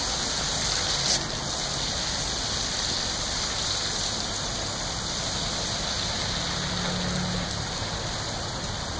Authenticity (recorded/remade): recorded